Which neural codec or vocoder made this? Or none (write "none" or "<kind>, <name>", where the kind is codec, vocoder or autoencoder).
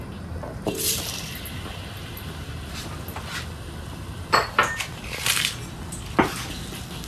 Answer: none